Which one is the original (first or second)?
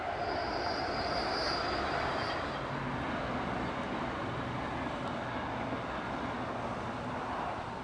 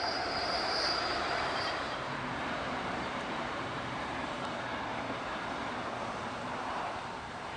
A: first